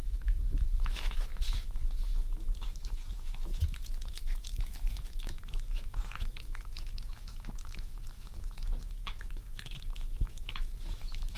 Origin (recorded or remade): remade